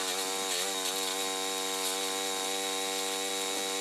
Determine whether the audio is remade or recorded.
recorded